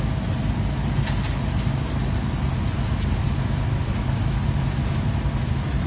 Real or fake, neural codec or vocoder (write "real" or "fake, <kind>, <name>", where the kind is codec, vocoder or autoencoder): real